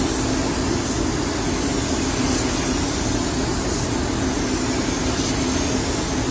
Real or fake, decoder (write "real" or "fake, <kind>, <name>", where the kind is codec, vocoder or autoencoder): real